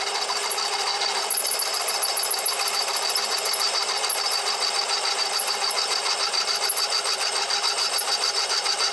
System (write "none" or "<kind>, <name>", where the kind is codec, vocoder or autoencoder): none